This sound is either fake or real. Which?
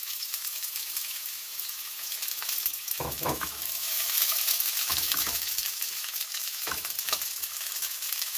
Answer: fake